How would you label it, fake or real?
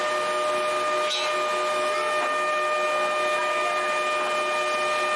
real